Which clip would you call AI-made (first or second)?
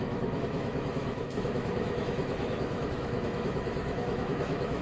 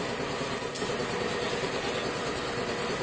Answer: first